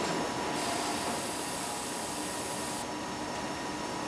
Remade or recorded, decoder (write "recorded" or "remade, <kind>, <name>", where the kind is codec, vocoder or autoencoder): recorded